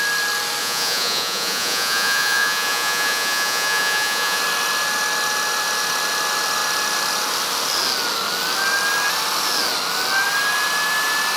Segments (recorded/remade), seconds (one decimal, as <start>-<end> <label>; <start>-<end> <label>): 0.0-0.6 recorded; 0.6-4.4 remade; 4.4-11.4 recorded